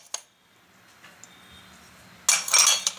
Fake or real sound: real